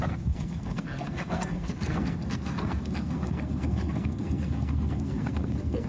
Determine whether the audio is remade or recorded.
remade